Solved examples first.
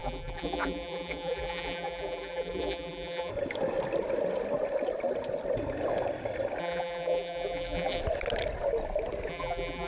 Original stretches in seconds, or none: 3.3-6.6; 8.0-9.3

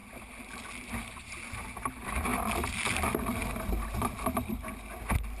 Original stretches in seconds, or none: 0.0-5.4

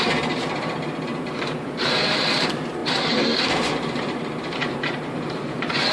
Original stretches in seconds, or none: none

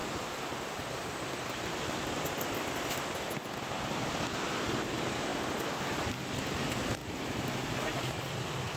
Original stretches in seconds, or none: 2.1-7.0; 7.7-8.8

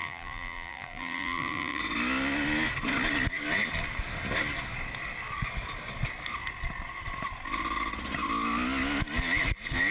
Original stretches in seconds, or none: 1.8-9.9

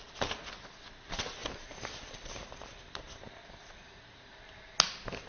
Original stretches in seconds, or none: 0.0-1.4; 4.0-5.3

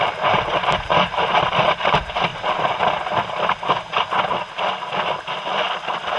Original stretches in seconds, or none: 2.3-6.2

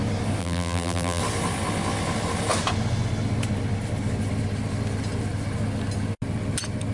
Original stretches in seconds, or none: 0.0-0.4; 1.2-6.9